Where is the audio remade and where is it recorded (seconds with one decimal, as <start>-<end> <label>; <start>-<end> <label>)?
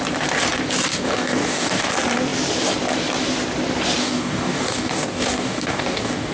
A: 0.0-0.9 recorded; 0.9-1.9 remade; 1.9-4.0 recorded; 4.0-6.3 remade